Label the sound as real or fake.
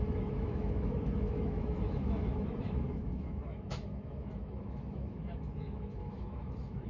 fake